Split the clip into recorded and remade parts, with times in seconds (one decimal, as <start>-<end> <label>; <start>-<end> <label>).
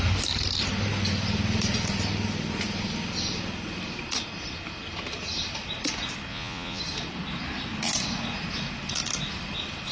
0.0-6.3 recorded; 6.3-6.8 remade; 6.8-9.9 recorded